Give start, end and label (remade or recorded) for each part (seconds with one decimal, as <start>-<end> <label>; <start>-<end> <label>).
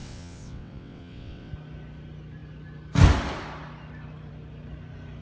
0.0-1.5 remade; 1.5-5.2 recorded